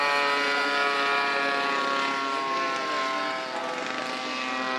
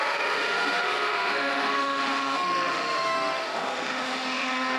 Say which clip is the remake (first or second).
second